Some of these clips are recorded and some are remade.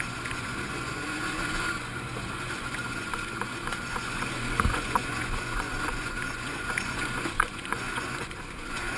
remade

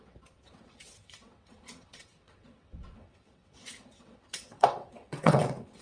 remade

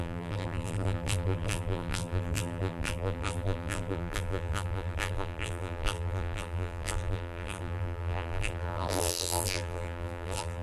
remade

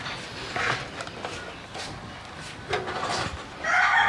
recorded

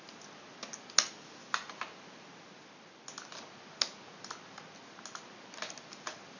recorded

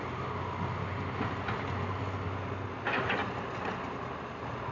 recorded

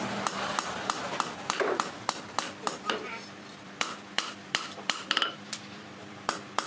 remade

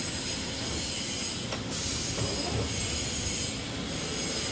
recorded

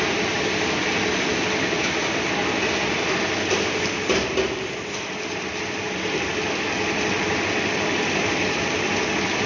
recorded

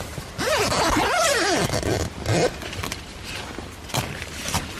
recorded